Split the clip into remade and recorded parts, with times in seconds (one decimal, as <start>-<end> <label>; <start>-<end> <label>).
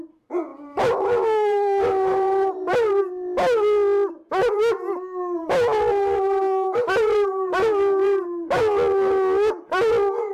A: 0.0-0.5 recorded; 0.5-3.0 remade; 3.0-5.9 recorded; 5.9-8.6 remade; 8.6-10.3 recorded